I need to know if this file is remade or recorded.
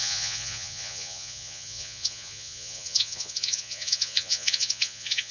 remade